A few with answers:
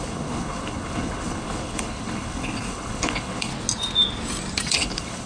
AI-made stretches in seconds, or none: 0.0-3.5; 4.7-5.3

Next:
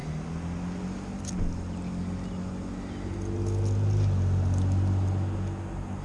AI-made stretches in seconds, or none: none

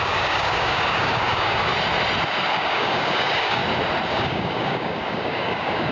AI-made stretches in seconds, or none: 0.0-1.7; 2.5-3.6; 4.1-5.9

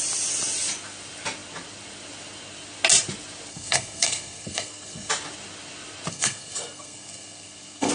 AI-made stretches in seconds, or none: 3.5-5.1; 6.1-7.9

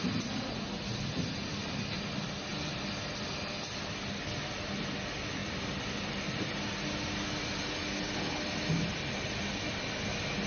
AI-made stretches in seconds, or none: 5.4-6.7

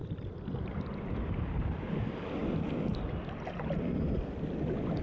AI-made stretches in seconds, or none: none

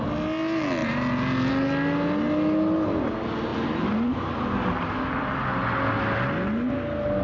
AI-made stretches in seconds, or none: 0.8-1.5; 3.5-4.7